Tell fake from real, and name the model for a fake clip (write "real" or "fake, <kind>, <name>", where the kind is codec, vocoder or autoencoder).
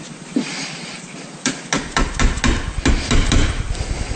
real